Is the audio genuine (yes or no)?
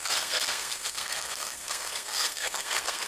no